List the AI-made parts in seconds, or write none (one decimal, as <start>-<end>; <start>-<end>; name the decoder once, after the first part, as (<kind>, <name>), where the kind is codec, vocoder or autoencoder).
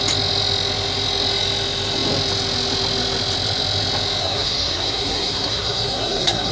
4.2-6.5 (codec, SNAC)